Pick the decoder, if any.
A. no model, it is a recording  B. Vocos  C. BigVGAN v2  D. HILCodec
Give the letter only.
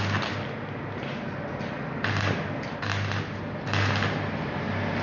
A